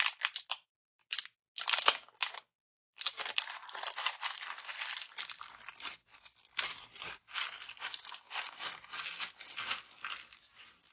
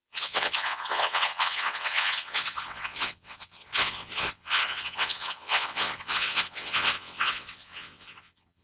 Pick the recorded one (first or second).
first